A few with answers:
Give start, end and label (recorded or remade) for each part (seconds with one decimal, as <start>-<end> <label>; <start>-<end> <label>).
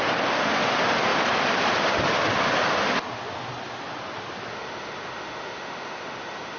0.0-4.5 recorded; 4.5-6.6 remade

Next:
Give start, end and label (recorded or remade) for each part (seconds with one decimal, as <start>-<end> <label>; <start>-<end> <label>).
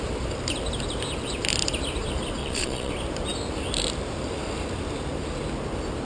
0.0-2.4 recorded; 2.4-2.9 remade; 2.9-6.1 recorded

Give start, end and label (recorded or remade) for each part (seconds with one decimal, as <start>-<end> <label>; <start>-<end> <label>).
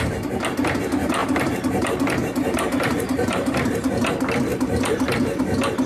0.0-1.2 recorded; 1.2-3.9 remade; 3.9-4.5 recorded; 4.5-5.4 remade; 5.4-5.9 recorded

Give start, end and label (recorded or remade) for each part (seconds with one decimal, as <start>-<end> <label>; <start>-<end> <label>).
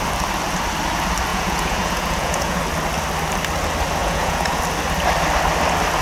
0.0-1.3 recorded; 1.3-2.6 remade; 2.6-4.0 recorded; 4.0-4.6 remade; 4.6-6.0 recorded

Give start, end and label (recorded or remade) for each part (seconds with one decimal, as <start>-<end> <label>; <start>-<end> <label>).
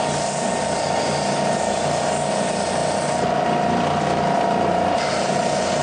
0.0-5.8 recorded